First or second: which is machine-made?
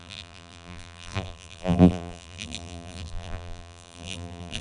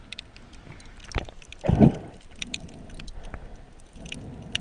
first